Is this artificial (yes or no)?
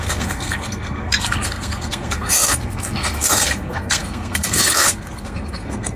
yes